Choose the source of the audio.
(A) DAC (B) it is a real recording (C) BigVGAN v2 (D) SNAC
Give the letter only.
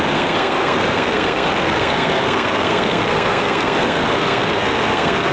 D